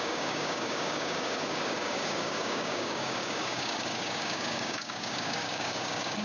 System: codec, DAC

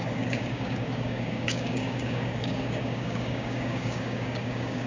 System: codec, DAC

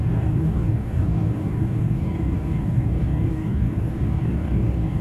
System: codec, DAC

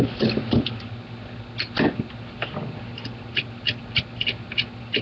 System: none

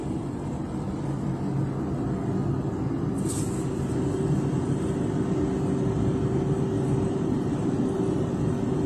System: none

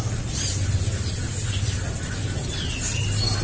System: none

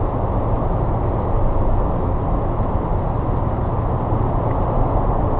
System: none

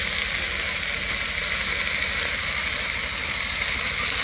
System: none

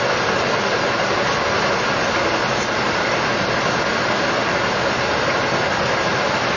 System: none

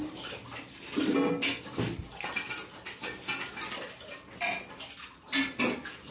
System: none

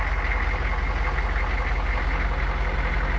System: none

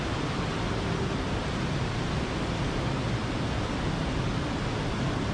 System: none